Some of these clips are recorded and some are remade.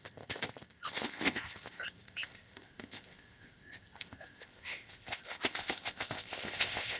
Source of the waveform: remade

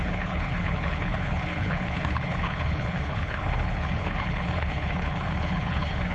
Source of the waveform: remade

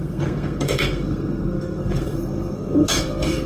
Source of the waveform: remade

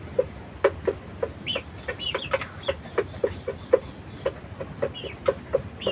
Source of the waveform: recorded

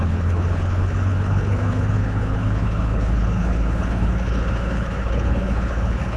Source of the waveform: remade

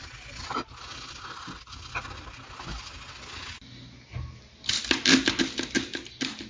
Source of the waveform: recorded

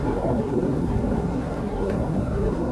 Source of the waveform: remade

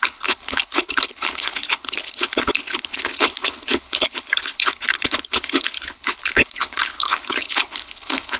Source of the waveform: remade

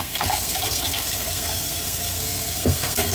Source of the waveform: remade